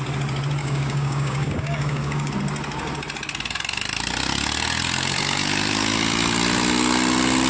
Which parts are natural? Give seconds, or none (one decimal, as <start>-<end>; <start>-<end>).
0.0-0.6; 2.3-7.5